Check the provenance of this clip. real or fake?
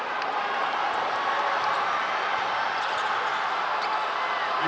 real